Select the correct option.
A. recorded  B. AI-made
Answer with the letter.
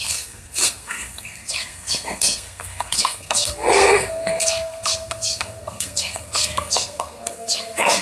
B